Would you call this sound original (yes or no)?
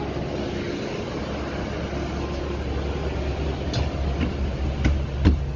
yes